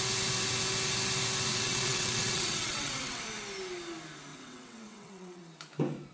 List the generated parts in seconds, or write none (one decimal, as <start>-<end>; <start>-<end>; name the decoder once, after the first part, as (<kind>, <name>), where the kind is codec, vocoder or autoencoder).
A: 1.5-3.2 (vocoder, WaveNeXt); 4.3-5.4